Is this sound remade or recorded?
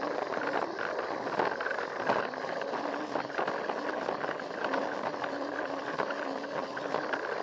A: recorded